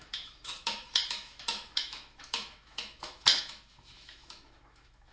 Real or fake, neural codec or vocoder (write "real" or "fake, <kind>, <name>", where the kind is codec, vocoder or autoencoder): fake, autoencoder, DAC-VAE